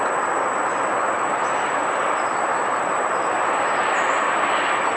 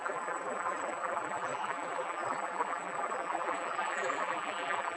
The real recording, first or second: first